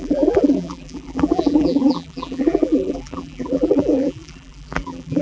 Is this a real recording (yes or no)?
no